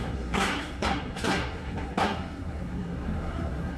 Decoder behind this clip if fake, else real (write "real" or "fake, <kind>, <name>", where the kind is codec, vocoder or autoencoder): fake, codec, SNAC